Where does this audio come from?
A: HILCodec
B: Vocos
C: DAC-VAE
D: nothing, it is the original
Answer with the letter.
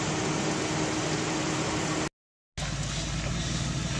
D